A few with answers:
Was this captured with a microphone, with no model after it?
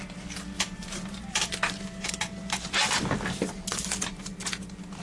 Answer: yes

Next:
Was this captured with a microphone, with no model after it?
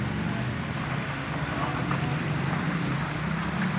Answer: yes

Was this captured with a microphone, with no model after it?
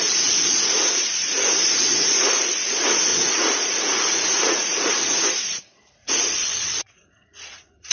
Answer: no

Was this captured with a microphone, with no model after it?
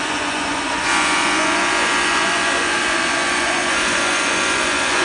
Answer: no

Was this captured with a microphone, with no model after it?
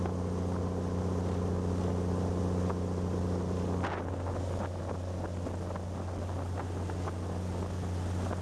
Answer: yes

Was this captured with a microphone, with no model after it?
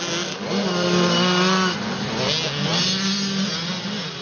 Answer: yes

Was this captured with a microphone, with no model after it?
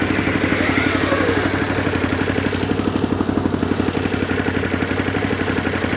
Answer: yes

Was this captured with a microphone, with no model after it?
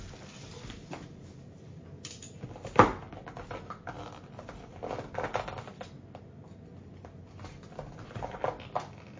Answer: yes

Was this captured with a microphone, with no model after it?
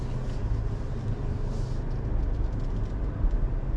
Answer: yes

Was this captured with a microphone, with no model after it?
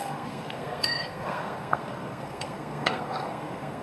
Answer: no